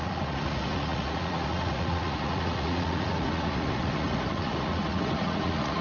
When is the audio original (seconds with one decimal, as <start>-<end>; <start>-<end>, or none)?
none